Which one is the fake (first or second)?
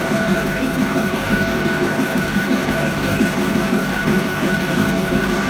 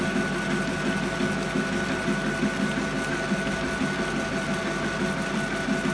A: first